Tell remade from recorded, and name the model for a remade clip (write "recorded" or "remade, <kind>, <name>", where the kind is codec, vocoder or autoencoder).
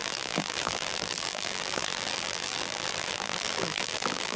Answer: remade, vocoder, BigVGAN v2